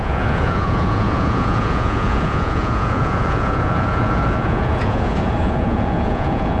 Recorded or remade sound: remade